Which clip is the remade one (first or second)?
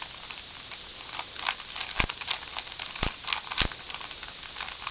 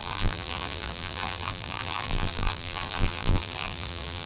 second